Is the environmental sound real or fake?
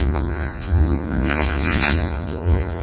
fake